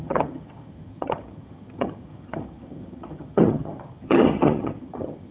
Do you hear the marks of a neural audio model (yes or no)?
yes